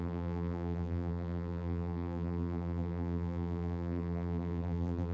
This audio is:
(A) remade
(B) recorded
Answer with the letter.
A